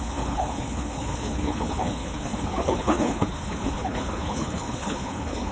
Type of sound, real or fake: fake